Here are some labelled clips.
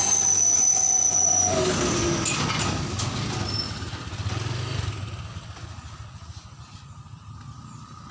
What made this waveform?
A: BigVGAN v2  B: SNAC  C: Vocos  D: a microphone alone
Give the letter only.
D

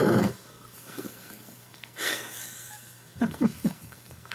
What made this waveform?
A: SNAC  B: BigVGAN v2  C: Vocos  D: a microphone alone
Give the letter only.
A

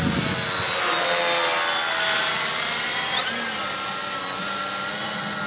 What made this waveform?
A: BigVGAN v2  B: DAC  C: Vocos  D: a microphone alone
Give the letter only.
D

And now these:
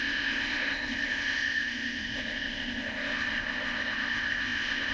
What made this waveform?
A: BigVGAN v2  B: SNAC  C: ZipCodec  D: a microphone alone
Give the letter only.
C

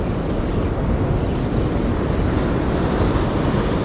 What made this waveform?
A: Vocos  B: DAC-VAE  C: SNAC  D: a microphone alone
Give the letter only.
D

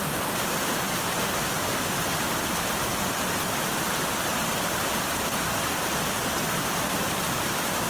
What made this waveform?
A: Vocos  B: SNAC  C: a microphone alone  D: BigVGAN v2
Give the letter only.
C